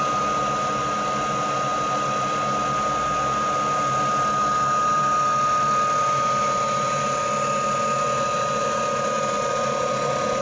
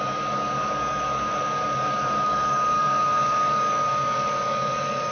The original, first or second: first